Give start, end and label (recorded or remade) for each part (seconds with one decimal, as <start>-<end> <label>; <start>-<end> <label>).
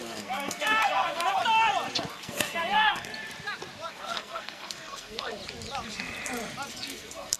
0.0-1.4 remade; 1.4-2.1 recorded; 2.1-3.1 remade; 3.1-3.9 recorded; 3.9-5.4 remade; 5.4-6.7 recorded; 6.7-7.4 remade